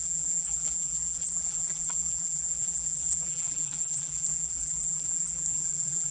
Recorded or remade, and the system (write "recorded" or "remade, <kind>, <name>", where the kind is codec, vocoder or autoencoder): remade, vocoder, BigVGAN v2